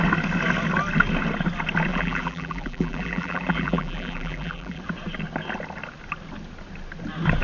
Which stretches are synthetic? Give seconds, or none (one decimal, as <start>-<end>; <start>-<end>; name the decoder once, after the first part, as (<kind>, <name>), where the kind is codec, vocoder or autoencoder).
1.9-4.8 (vocoder, BigVGAN v2)

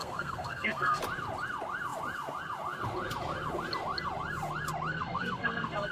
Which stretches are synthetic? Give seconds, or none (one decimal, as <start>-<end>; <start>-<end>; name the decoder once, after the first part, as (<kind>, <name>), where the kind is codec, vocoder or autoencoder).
0.0-1.0 (codec, SNAC); 4.9-5.9